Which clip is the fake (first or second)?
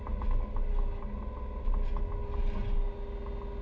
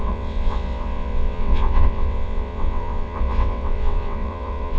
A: second